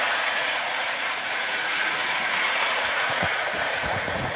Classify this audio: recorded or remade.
remade